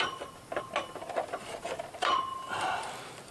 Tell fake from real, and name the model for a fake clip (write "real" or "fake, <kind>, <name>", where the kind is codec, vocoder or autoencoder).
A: real